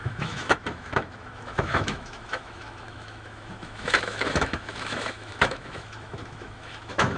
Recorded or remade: remade